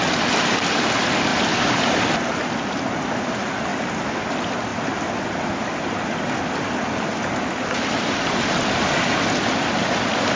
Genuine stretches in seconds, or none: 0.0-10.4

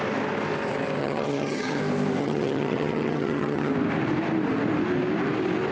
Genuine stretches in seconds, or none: 0.0-1.0; 1.8-2.2; 3.7-5.7

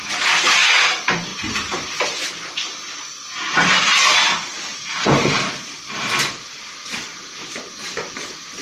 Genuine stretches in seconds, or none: 0.0-1.3; 3.0-4.7

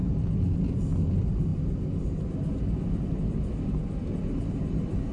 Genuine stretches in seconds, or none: 0.0-5.1